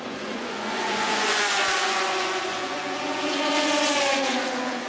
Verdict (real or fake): fake